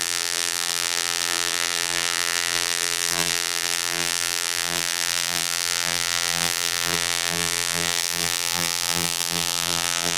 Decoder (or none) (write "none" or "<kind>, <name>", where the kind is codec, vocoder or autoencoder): vocoder, BigVGAN v2